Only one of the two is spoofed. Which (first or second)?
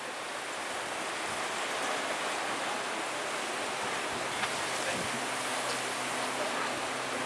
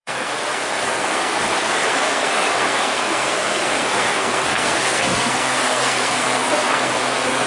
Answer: second